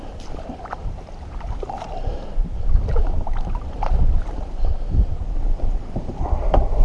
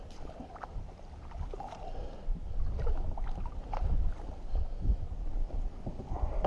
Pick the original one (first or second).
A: second